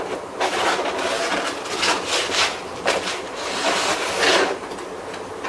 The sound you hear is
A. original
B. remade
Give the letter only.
A